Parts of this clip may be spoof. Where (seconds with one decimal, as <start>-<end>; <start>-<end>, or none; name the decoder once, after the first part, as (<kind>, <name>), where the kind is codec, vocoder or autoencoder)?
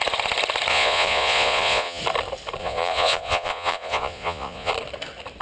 0.7-2.0 (vocoder, Vocos); 2.6-4.7